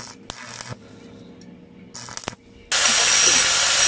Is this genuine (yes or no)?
yes